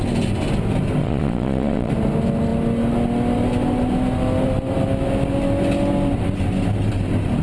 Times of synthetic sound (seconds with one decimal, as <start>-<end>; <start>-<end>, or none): 1.0-1.9